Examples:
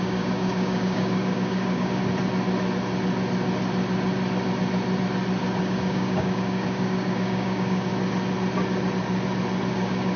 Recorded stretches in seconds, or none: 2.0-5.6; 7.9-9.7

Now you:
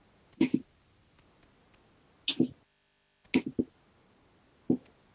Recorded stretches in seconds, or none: 0.0-5.1

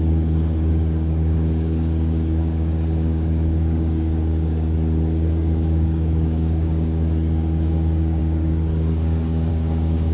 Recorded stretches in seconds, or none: none